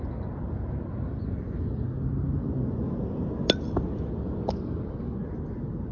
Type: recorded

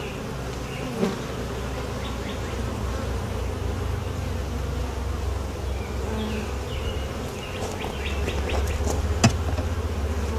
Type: recorded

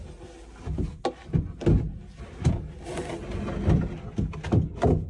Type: recorded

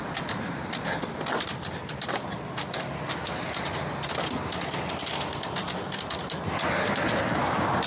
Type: recorded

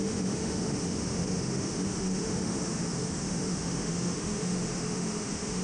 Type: remade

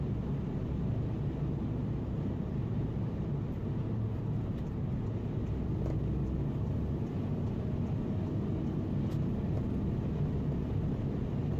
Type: recorded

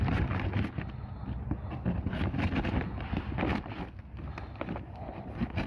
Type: recorded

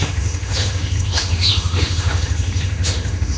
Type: remade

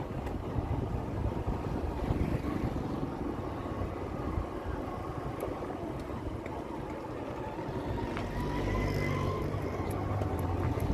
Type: recorded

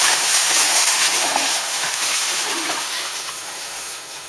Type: remade